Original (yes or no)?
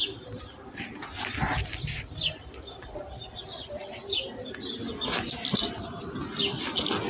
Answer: yes